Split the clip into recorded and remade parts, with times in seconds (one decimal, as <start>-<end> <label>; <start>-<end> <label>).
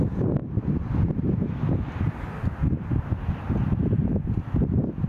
0.0-5.1 recorded